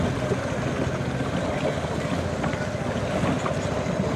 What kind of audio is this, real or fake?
real